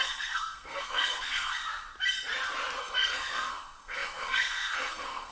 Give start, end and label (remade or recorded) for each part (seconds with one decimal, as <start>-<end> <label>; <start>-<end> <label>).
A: 0.0-1.6 remade; 1.6-2.8 recorded; 2.8-5.3 remade